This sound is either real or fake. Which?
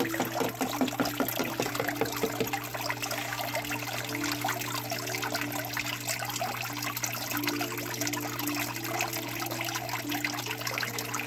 real